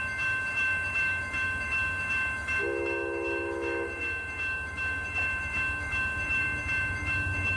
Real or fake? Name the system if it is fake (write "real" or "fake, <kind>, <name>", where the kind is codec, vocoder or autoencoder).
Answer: fake, autoencoder, DAC-VAE